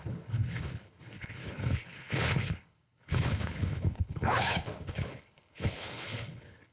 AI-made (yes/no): yes